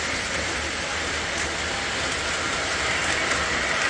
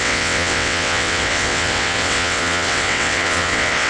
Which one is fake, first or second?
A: second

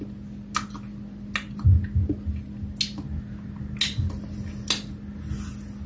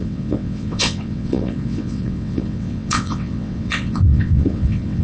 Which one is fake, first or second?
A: second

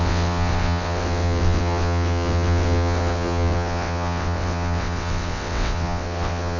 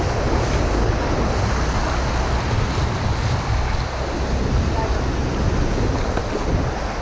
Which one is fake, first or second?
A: first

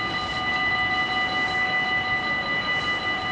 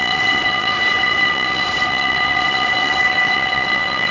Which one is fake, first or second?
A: second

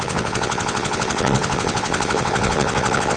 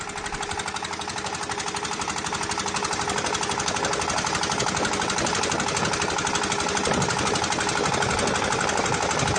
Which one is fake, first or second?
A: first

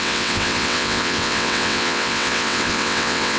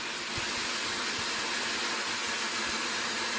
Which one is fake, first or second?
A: first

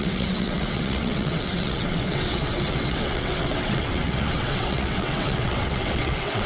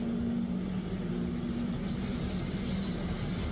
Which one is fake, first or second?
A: first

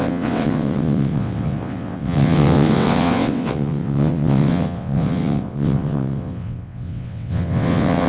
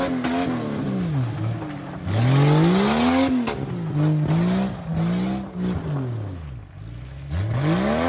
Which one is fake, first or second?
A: first